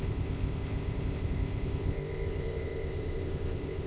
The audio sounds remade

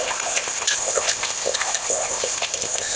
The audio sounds remade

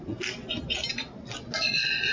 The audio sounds recorded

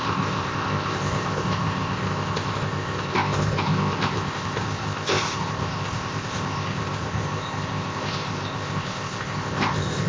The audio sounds remade